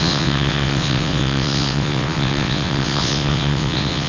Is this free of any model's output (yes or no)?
no